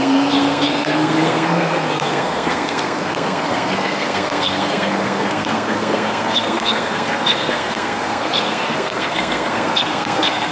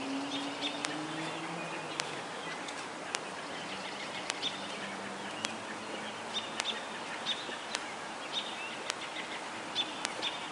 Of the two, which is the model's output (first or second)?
first